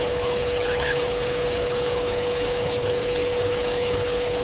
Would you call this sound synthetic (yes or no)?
yes